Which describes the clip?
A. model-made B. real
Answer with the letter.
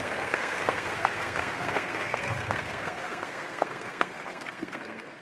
A